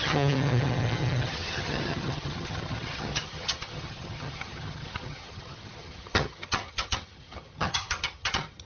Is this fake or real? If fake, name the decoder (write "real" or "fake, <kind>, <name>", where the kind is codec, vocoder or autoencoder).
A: fake, vocoder, HiFi-GAN